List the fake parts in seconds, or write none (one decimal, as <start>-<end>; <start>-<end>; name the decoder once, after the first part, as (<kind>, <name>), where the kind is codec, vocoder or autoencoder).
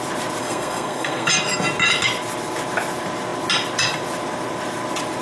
0.4-1.3 (codec, SNAC)